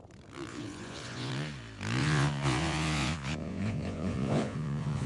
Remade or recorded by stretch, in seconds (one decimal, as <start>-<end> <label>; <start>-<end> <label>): 0.0-0.5 recorded; 0.5-1.3 remade; 1.3-2.0 recorded; 2.0-5.1 remade